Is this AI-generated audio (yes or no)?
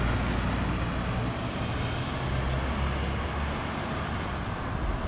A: no